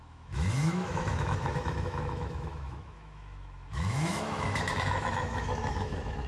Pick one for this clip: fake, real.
fake